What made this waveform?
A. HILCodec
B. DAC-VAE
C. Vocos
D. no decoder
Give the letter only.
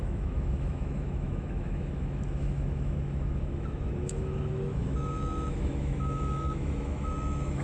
B